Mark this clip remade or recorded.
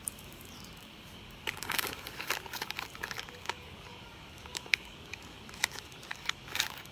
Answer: remade